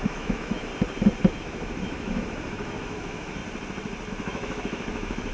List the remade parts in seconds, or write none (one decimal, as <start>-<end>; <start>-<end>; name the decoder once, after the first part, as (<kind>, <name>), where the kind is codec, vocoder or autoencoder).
0.0-0.7 (autoencoder, DAC-VAE); 1.4-3.4; 4.1-5.3